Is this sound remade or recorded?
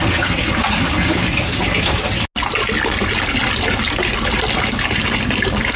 recorded